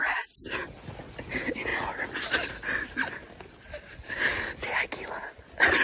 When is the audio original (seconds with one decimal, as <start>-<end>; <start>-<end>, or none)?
0.0-5.8